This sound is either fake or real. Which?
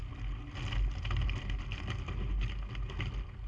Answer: real